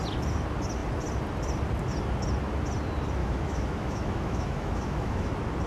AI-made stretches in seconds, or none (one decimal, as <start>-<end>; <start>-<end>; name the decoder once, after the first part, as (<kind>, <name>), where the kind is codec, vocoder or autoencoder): 3.2-5.3 (autoencoder, DAC-VAE)